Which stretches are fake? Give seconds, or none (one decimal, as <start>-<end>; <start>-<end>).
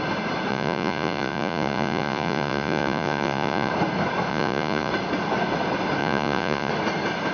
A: 0.5-3.7; 4.3-4.9; 6.0-6.7